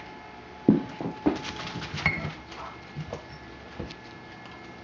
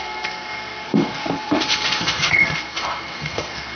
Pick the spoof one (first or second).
second